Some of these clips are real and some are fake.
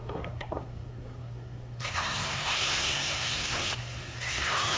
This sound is fake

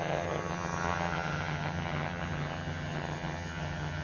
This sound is fake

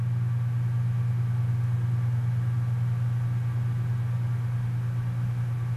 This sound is real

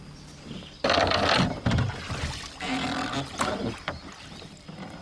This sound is real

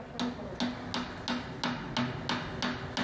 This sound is real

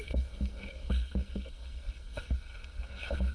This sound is fake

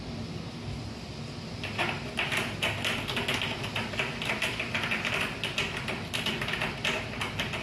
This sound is real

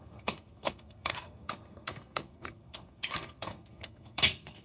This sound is fake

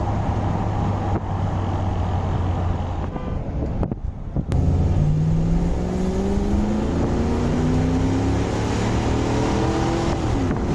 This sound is real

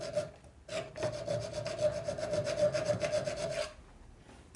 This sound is real